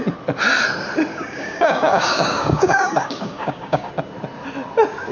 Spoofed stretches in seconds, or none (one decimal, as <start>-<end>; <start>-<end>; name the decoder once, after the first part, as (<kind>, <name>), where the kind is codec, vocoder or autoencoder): 1.1-3.9 (codec, DAC)